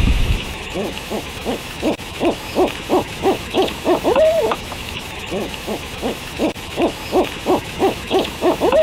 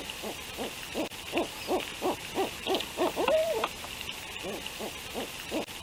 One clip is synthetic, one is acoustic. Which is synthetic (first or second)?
first